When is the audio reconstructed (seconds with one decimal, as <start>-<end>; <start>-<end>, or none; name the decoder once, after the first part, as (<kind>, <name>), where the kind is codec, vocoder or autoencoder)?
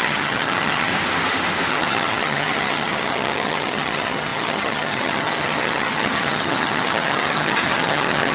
0.0-0.9 (vocoder, HiFi-GAN); 1.7-8.3